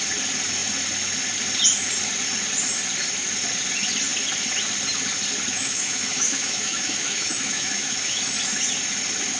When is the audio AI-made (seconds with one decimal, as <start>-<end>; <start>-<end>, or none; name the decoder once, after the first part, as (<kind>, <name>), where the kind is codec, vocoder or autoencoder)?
5.5-8.2 (autoencoder, DAC-VAE)